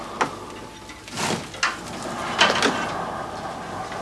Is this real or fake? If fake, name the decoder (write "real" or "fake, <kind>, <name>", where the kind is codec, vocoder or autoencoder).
real